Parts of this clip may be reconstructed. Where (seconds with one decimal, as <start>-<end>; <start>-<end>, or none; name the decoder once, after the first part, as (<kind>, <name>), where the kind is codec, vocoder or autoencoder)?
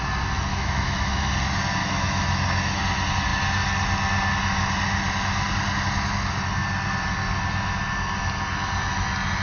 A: 0.5-1.3 (autoencoder, DAC-VAE); 1.8-2.8